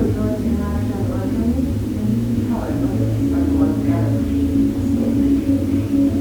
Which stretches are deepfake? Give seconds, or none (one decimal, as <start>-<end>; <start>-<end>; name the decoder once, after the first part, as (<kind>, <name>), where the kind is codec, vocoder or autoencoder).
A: 2.1-3.2 (autoencoder, DAC-VAE)